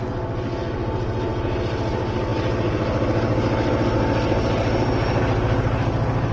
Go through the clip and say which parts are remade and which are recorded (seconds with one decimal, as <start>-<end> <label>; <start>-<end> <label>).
0.0-6.3 recorded